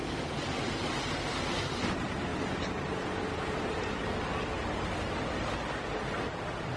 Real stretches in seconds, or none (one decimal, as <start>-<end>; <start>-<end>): 0.0-6.8